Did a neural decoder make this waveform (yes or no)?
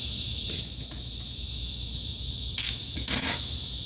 yes